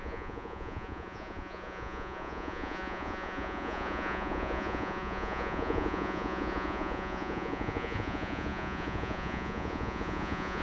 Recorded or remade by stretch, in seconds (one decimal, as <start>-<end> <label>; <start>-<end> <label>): 0.0-10.6 remade

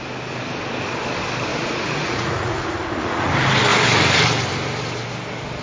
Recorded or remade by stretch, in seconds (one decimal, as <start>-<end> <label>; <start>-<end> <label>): 0.0-1.5 recorded; 1.5-3.3 remade; 3.3-5.6 recorded

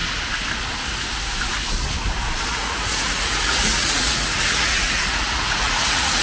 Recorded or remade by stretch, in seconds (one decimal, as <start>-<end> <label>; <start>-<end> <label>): 0.0-2.5 recorded; 2.5-6.2 remade

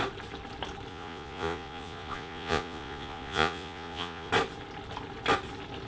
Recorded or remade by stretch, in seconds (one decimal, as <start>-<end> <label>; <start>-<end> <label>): 0.0-0.9 recorded; 0.9-4.3 remade; 4.3-5.9 recorded

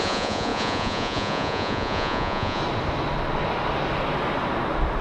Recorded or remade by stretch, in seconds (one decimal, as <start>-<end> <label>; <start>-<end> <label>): 0.0-2.6 remade; 2.6-5.0 recorded

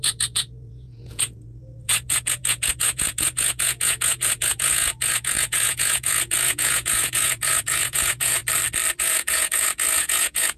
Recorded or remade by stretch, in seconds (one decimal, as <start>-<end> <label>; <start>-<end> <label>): 0.0-8.4 remade; 8.4-9.0 recorded; 9.0-10.6 remade

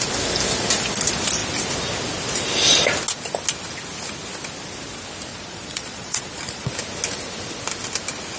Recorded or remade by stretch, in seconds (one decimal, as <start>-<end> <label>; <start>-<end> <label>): 0.0-5.3 recorded; 5.3-6.7 remade; 6.7-8.4 recorded

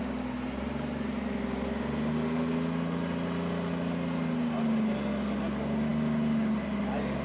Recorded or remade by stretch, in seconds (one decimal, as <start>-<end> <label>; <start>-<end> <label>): 0.0-7.2 recorded